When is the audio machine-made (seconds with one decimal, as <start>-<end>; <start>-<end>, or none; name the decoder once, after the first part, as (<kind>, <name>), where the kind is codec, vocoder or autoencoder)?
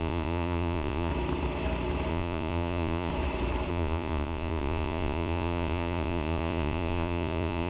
0.0-1.1 (vocoder, Vocos); 2.1-3.1; 3.7-7.7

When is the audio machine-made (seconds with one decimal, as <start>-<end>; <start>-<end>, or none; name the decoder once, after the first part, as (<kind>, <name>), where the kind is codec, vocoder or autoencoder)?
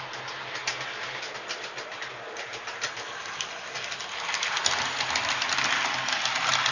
none